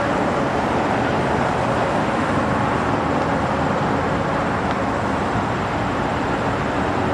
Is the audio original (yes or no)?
yes